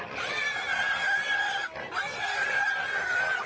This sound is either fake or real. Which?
real